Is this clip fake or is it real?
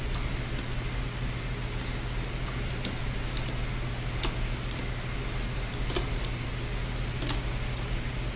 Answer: real